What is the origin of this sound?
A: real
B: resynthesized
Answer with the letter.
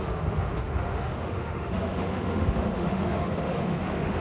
B